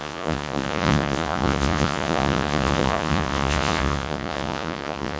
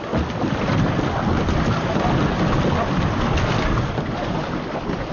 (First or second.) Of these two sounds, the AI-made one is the first